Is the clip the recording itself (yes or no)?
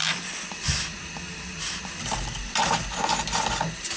yes